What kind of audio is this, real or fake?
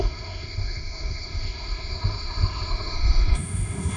fake